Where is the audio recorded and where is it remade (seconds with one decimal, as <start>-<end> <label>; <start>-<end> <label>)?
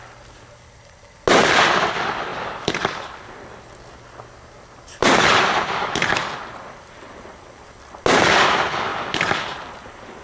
0.0-10.2 recorded